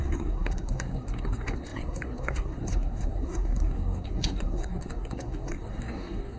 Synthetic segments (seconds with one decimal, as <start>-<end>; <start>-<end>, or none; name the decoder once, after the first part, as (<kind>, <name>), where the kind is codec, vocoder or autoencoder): 0.0-6.4 (codec, SNAC)